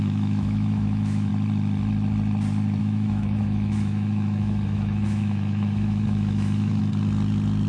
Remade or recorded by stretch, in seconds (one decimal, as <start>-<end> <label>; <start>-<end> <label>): 0.0-1.3 remade; 1.3-2.8 recorded; 2.8-6.8 remade; 6.8-7.7 recorded